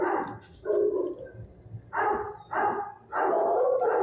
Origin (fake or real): real